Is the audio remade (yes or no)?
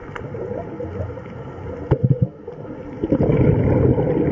no